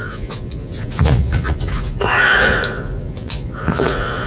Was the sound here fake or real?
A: fake